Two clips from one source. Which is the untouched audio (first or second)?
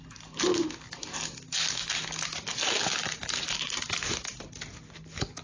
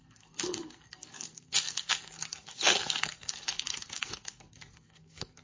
first